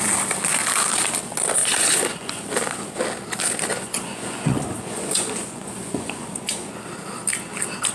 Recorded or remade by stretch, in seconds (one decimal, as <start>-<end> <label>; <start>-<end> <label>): 0.0-1.6 recorded; 1.6-2.5 remade; 2.5-3.7 recorded; 3.7-6.8 remade; 6.8-7.9 recorded